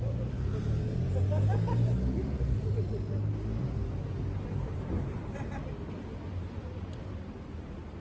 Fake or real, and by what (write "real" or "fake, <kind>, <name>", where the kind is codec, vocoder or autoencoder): real